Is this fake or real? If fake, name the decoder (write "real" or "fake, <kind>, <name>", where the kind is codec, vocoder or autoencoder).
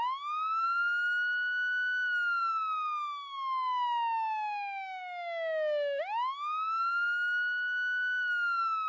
real